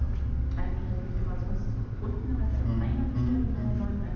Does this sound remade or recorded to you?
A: recorded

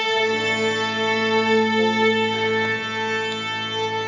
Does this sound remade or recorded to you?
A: recorded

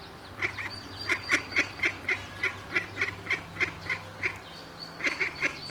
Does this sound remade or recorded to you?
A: recorded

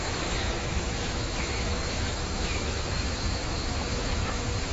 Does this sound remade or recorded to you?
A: remade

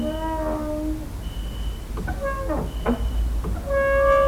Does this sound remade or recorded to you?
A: recorded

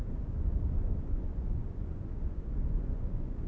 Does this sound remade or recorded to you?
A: remade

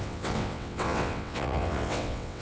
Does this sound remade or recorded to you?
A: remade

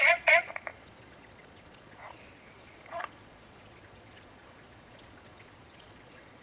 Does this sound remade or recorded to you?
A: remade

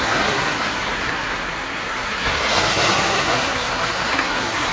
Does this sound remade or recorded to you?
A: remade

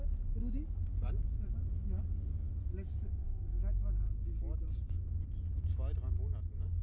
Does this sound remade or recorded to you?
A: recorded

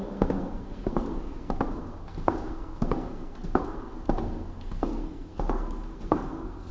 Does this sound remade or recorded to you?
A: remade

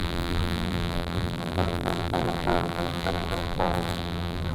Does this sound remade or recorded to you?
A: remade